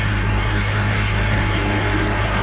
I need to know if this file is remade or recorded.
remade